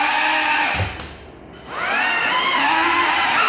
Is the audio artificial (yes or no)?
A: no